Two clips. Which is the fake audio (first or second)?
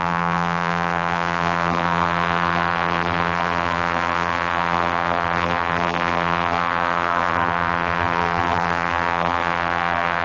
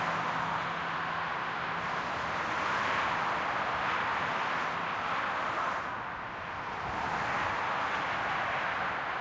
first